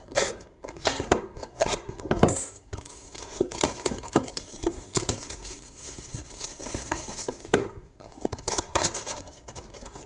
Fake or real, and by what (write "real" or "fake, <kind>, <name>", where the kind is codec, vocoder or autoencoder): fake, codec, SNAC